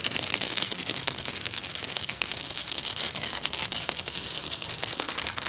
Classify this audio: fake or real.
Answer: fake